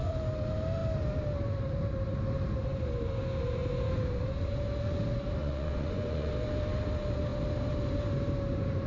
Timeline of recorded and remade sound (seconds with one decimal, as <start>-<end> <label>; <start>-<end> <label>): 0.0-5.4 recorded; 5.4-6.3 remade; 6.3-8.9 recorded